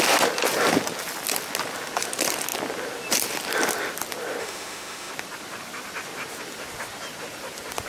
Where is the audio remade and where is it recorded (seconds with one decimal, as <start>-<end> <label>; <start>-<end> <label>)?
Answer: 0.0-4.4 recorded; 4.4-5.1 remade; 5.1-7.9 recorded